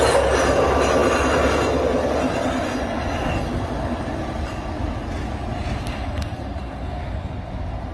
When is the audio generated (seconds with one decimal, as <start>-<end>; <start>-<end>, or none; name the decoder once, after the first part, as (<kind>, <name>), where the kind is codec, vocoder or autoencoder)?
none